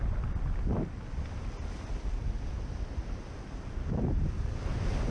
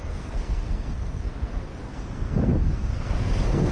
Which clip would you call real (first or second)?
first